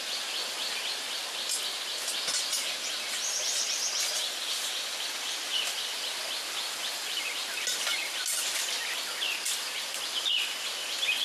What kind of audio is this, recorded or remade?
recorded